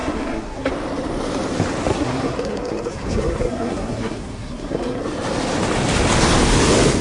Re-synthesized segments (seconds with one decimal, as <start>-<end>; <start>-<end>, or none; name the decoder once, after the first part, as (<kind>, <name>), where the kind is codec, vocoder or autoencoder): 0.0-0.7 (codec, SNAC); 1.9-5.0